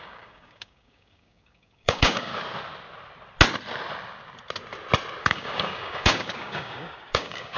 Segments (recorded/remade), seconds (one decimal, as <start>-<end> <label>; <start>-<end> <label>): 0.0-2.3 remade; 2.3-5.2 recorded; 5.2-7.6 remade